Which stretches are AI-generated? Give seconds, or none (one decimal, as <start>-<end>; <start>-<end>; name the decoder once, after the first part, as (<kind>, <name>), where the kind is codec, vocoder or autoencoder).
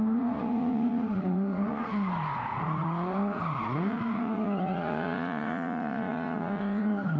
0.0-7.2 (vocoder, Vocos)